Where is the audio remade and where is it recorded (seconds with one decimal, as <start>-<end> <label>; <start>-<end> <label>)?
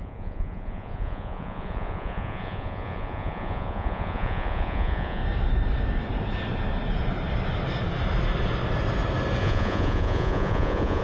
0.0-5.2 remade; 5.2-9.4 recorded; 9.4-11.0 remade